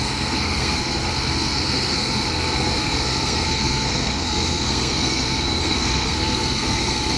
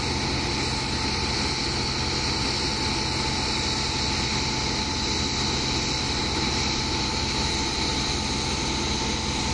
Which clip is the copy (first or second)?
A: first